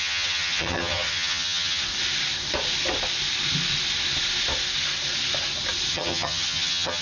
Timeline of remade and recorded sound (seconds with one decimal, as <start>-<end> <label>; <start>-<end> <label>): 0.0-1.8 remade; 1.8-5.9 recorded; 5.9-7.0 remade

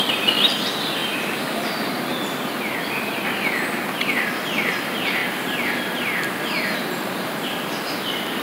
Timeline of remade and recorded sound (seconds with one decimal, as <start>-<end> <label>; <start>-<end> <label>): 0.0-8.4 recorded

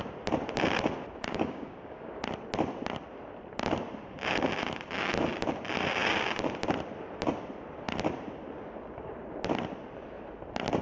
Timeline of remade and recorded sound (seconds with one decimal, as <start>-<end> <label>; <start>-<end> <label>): 0.0-1.3 recorded; 1.3-2.1 remade; 2.1-10.8 recorded

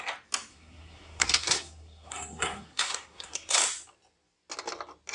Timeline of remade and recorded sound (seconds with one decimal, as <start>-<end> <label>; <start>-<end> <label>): 0.0-0.5 recorded; 0.5-3.6 remade; 3.6-5.1 recorded

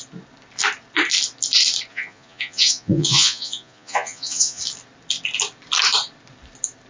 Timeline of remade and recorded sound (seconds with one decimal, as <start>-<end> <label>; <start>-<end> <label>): 0.0-1.9 recorded; 1.9-4.6 remade; 4.6-6.9 recorded

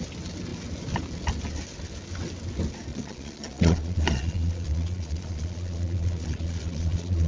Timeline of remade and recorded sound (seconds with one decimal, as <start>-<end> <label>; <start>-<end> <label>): 0.0-2.9 recorded; 2.9-7.3 remade

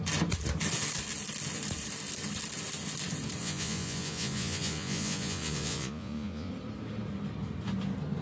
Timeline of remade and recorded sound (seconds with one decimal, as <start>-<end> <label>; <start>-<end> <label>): 0.0-3.4 recorded; 3.4-6.5 remade; 6.5-8.2 recorded

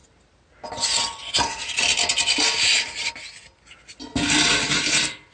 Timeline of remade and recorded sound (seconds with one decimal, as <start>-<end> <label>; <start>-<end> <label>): 0.0-5.3 recorded